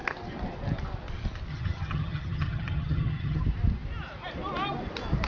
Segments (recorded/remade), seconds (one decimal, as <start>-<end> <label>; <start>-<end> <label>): 0.0-1.5 recorded; 1.5-3.4 remade; 3.4-5.3 recorded